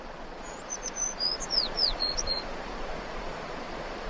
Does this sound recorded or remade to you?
remade